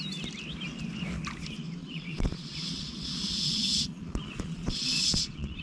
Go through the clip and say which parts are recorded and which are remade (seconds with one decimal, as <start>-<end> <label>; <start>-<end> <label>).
0.0-1.8 recorded; 1.8-5.6 remade